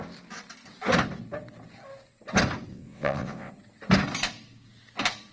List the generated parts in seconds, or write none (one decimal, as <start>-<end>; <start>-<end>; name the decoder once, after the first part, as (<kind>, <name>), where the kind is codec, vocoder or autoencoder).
2.7-3.5 (vocoder, WaveNeXt)

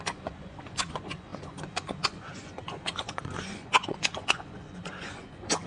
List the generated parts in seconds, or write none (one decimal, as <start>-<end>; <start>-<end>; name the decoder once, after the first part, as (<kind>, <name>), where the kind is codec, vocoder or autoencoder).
0.0-5.7 (vocoder, Vocos)

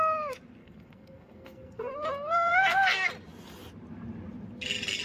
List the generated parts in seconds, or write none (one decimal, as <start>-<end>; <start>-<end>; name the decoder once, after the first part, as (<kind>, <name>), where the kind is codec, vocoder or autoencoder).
0.6-3.1 (codec, SNAC)

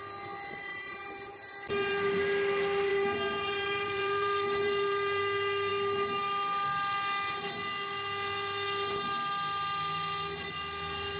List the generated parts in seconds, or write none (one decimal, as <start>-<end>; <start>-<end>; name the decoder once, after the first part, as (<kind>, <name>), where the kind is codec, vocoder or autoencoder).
0.7-2.2 (vocoder, BigVGAN v2); 2.9-5.2

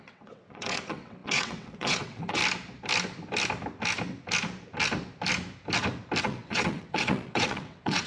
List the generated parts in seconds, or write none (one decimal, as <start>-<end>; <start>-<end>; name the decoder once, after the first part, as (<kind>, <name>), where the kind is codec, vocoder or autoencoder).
0.0-2.4 (vocoder, WaveNeXt); 6.2-8.1